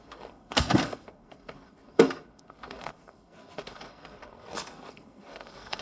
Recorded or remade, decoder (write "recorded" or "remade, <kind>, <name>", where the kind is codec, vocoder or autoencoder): remade, codec, SNAC